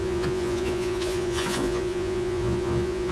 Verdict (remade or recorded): remade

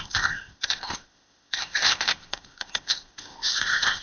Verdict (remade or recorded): remade